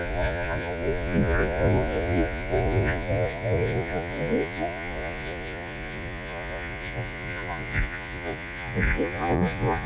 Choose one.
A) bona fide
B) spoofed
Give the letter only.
B